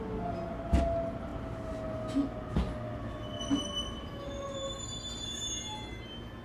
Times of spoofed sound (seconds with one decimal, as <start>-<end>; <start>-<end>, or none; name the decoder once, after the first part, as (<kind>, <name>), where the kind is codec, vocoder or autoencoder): none